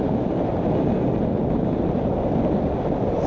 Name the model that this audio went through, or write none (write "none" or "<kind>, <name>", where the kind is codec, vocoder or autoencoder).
none